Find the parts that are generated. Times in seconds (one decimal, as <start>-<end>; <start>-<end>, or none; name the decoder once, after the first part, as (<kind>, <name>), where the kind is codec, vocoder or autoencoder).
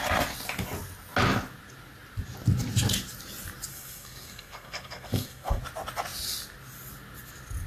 3.7-5.6 (codec, SNAC)